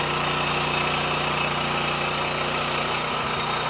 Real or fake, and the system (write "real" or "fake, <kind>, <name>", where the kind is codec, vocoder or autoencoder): real